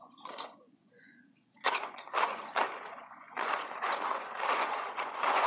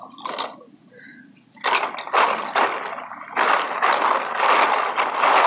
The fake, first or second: first